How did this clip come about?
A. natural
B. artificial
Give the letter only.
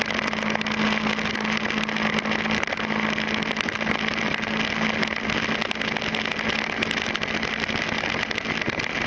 A